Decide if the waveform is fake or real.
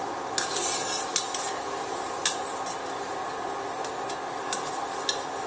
real